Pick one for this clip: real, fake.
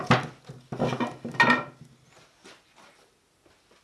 real